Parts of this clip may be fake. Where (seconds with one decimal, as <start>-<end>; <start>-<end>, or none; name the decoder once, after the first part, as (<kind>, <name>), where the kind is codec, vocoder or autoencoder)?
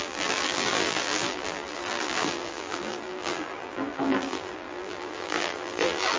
0.0-6.2 (vocoder, BigVGAN v2)